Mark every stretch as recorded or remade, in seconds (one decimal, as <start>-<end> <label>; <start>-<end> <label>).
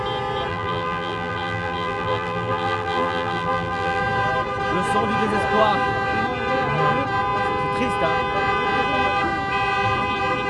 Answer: 0.0-0.5 recorded; 0.5-4.0 remade; 4.0-10.5 recorded